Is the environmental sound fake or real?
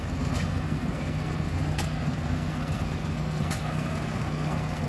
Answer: fake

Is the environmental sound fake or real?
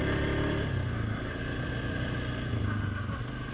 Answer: real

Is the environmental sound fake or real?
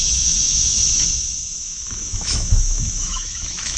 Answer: fake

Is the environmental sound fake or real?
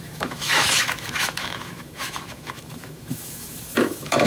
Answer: fake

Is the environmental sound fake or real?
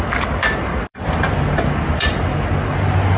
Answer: real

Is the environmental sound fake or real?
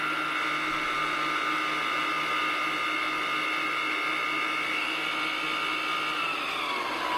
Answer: real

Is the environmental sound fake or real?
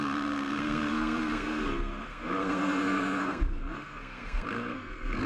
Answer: fake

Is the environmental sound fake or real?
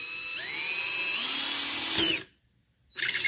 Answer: real